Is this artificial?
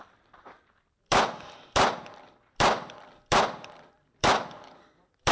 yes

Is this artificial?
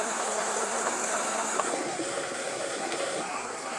yes